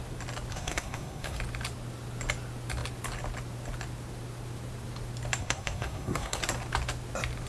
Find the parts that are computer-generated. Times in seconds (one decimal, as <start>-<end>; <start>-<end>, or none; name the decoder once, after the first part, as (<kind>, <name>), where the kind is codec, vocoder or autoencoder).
0.5-1.4 (codec, SNAC); 5.4-6.4